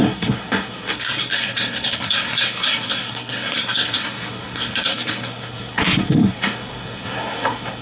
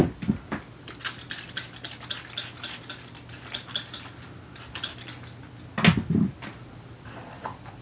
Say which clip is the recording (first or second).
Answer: second